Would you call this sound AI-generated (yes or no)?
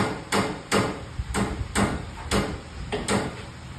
no